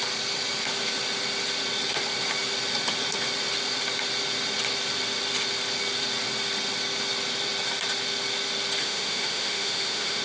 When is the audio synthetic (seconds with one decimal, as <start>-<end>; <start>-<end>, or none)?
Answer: 8.8-10.2